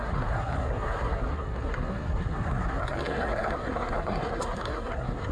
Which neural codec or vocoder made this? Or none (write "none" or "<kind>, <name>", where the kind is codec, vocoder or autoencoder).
codec, SNAC